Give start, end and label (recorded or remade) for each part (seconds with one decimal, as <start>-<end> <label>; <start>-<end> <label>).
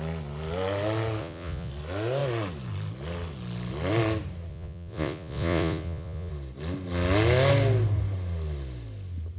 0.0-1.2 recorded; 1.2-1.7 remade; 1.7-4.5 recorded; 4.5-6.3 remade; 6.3-9.4 recorded